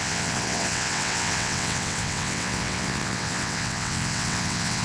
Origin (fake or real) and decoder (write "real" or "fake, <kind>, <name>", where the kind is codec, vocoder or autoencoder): fake, vocoder, WaveNeXt